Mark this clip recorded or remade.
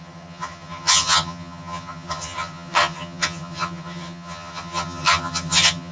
remade